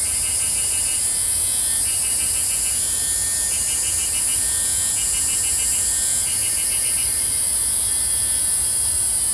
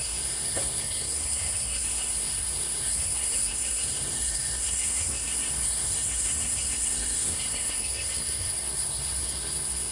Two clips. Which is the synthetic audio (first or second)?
second